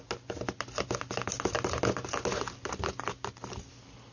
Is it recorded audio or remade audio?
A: recorded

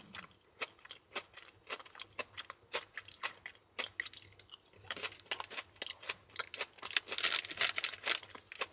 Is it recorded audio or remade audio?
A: recorded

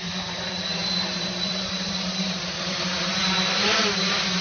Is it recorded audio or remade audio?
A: remade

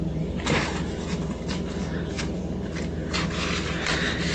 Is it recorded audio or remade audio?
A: recorded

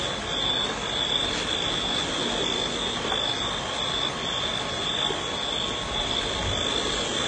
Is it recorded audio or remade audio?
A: recorded